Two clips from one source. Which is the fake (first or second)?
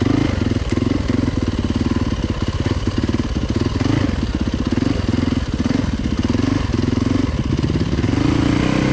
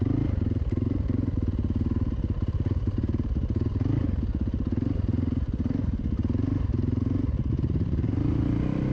second